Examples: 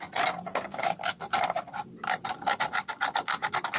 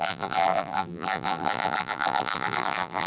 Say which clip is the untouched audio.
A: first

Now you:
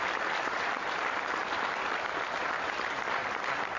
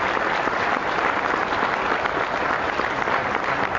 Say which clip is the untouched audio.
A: second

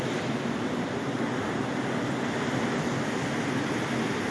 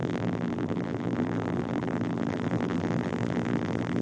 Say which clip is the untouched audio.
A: first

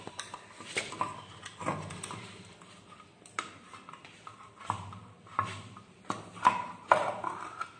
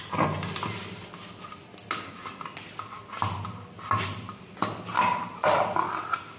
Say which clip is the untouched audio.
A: second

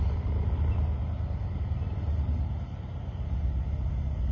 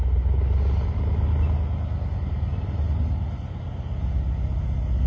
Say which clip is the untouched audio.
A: second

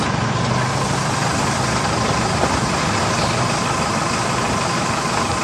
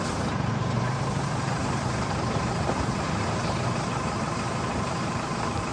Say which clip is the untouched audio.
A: first